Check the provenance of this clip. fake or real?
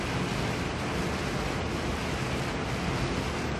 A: real